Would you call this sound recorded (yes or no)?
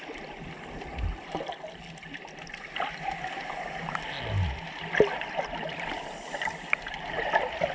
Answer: yes